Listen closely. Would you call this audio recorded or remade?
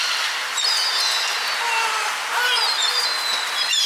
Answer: recorded